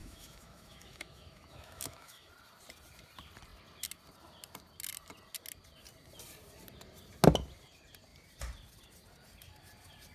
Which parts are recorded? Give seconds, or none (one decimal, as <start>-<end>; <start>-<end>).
2.3-10.1